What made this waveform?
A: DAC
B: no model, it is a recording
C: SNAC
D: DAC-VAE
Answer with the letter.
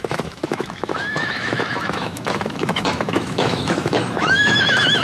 D